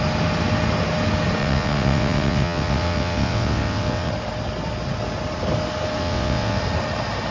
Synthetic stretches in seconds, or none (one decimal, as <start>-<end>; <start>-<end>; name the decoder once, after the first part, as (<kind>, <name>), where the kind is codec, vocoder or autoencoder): 1.4-4.1 (vocoder, WaveNeXt); 6.0-6.6